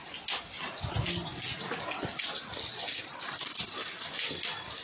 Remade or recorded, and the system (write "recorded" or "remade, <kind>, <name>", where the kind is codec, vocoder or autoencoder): recorded